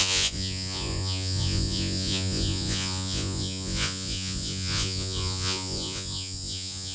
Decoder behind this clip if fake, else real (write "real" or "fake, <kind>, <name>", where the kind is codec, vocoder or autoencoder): fake, vocoder, Vocos